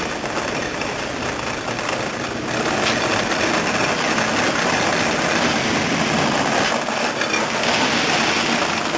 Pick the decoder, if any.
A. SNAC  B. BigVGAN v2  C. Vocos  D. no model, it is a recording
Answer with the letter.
D